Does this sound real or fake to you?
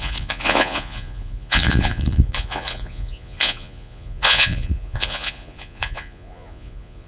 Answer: fake